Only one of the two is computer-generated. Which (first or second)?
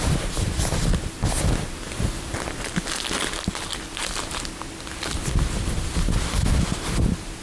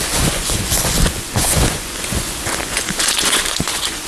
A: second